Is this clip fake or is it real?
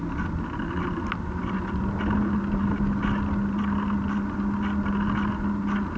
real